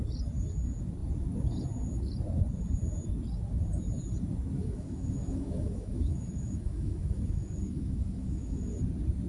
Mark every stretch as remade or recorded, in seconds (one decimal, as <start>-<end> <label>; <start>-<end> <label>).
0.0-4.6 recorded; 4.6-8.7 remade; 8.7-9.3 recorded